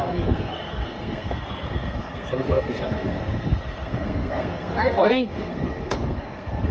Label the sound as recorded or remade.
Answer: remade